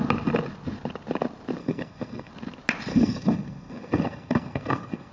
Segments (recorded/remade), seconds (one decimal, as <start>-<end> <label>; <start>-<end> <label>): 0.0-1.6 recorded; 1.6-2.3 remade; 2.3-2.9 recorded; 2.9-5.1 remade